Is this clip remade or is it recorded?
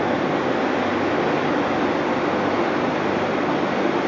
recorded